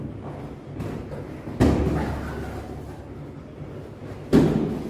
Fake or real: real